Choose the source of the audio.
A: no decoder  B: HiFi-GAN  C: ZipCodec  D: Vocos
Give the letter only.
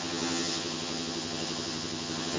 B